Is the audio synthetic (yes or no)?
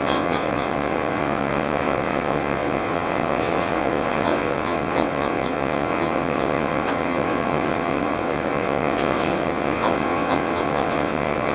yes